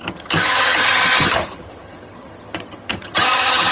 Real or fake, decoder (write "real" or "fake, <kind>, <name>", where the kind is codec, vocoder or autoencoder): fake, vocoder, HiFi-GAN